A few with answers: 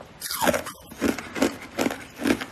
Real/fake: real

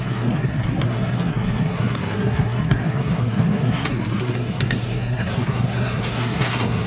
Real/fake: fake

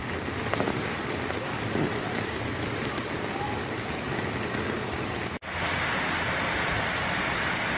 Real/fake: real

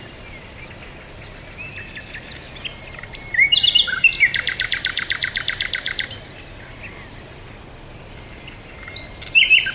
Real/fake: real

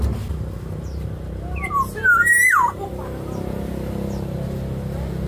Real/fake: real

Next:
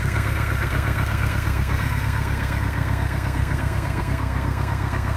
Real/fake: fake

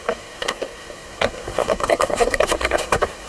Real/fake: fake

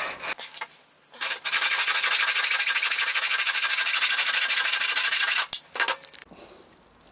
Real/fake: real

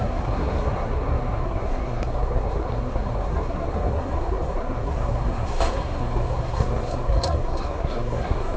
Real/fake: fake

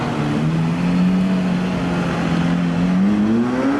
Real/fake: real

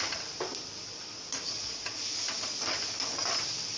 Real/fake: real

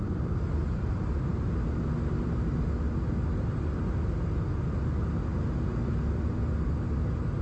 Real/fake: real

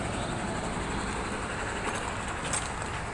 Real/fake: real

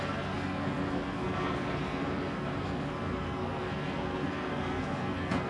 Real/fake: fake